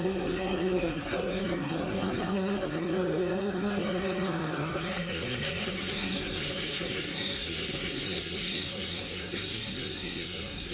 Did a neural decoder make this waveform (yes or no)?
yes